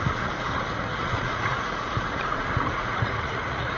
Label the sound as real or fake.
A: fake